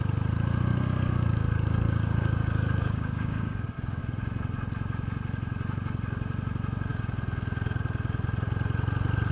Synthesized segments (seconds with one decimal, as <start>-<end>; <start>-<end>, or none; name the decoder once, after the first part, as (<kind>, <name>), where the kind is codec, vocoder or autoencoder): 0.7-4.0 (codec, DAC)